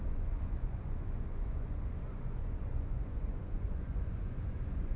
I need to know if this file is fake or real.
fake